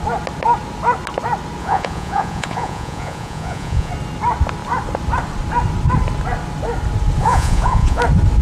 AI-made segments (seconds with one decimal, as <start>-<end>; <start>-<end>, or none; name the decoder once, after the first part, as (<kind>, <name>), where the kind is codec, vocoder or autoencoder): 1.6-3.9 (vocoder, Vocos); 7.2-8.0